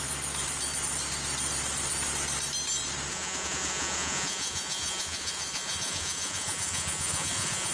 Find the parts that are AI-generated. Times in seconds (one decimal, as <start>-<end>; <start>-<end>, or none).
3.1-7.7